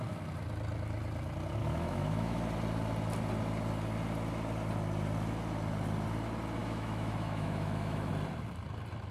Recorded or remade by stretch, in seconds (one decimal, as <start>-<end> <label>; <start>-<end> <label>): 0.0-1.6 recorded; 1.6-2.4 remade; 2.4-6.6 recorded; 6.6-8.1 remade; 8.1-9.1 recorded